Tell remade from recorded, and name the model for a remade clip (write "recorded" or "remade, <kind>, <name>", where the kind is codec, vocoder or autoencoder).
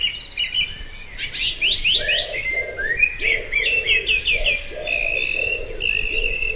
recorded